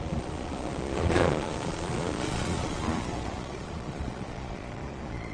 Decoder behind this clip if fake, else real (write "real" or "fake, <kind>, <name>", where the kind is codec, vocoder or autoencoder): fake, vocoder, Vocos